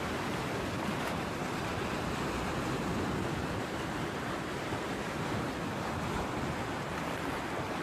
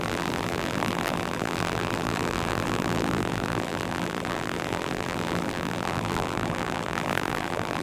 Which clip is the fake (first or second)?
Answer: second